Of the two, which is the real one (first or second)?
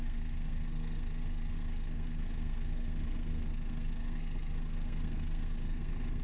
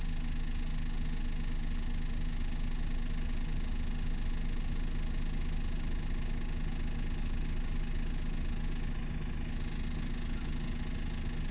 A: second